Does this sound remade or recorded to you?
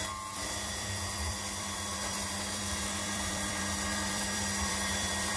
remade